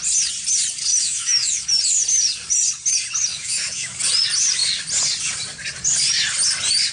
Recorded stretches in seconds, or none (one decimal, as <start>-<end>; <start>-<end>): 0.0-0.9; 1.7-3.3; 4.0-6.9